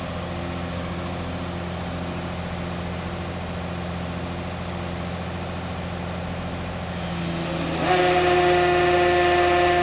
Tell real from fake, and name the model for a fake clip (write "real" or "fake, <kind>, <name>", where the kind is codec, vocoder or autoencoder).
real